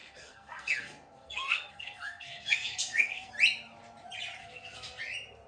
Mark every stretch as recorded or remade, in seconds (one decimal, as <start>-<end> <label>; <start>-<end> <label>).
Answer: 0.0-3.3 remade; 3.3-4.4 recorded; 4.4-5.0 remade; 5.0-5.5 recorded